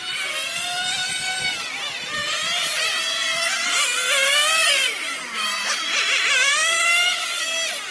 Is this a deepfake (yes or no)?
no